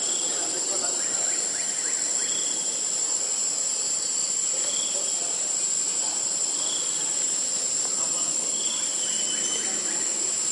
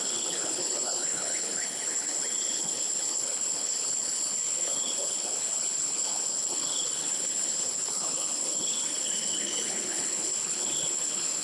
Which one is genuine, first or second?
first